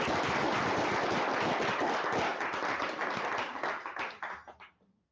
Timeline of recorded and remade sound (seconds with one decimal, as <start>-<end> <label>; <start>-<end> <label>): 0.0-5.1 recorded